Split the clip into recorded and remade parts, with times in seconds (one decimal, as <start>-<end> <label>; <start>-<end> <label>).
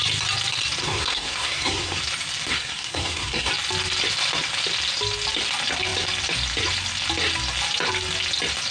0.0-0.8 recorded; 0.8-2.0 remade; 2.0-2.5 recorded; 2.5-3.5 remade; 3.5-8.7 recorded